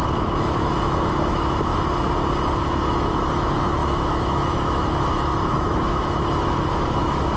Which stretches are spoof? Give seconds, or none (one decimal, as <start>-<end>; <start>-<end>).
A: 0.0-1.7; 2.7-7.4